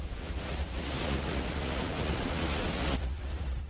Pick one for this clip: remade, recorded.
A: remade